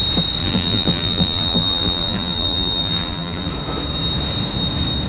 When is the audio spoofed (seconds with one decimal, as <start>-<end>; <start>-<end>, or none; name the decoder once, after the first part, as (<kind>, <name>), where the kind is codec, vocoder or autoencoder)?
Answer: 0.4-3.5 (vocoder, BigVGAN v2)